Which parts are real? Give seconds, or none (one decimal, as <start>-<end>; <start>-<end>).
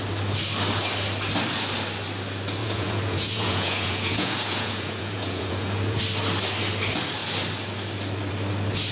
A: 0.0-2.6; 6.0-8.9